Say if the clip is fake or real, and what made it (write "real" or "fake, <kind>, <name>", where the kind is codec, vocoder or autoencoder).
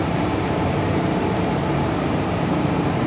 fake, vocoder, BigVGAN v2